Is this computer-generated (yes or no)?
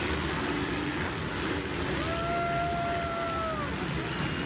no